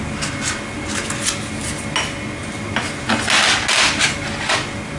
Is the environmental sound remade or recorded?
recorded